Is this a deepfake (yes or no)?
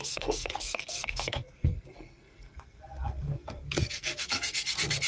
yes